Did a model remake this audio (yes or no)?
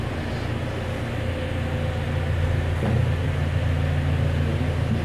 no